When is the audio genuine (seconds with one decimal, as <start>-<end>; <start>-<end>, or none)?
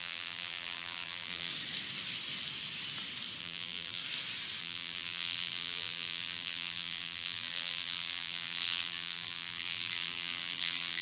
1.5-3.4; 4.0-4.6